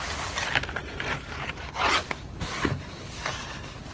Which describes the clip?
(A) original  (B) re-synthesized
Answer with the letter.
A